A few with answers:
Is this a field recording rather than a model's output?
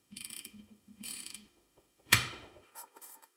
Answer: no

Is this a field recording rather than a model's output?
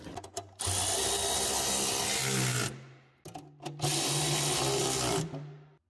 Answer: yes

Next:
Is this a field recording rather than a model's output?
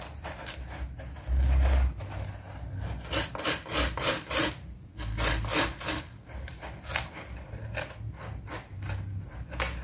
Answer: yes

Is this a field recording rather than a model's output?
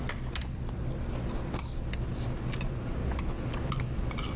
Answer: yes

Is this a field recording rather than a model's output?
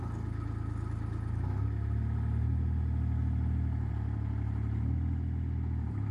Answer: yes